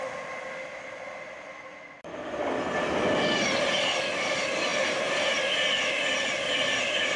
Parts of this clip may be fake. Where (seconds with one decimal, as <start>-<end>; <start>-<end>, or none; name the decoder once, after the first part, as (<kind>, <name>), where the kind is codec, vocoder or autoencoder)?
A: none